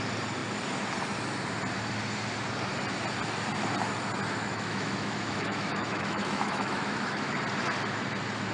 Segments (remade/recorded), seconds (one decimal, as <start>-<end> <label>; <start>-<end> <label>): 0.0-4.5 recorded; 4.5-7.4 remade; 7.4-8.5 recorded